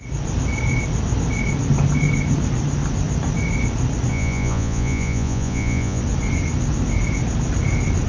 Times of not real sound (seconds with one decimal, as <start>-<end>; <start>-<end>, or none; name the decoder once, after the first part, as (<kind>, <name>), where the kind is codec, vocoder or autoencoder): 4.1-6.0 (vocoder, Vocos)